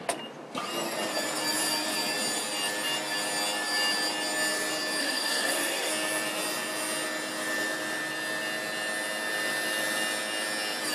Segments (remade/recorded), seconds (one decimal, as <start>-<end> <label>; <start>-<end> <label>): 0.0-5.0 recorded; 5.0-5.9 remade; 5.9-10.9 recorded